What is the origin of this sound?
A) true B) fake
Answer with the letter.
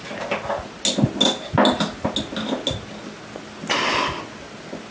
A